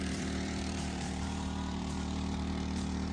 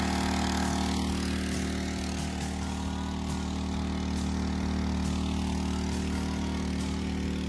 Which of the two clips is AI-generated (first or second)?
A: first